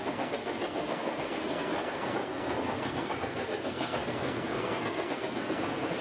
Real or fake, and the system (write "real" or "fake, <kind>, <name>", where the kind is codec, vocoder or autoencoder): fake, codec, SNAC